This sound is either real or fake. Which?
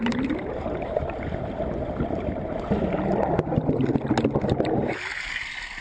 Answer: real